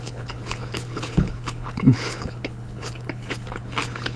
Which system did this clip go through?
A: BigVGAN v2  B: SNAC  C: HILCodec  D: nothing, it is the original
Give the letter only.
C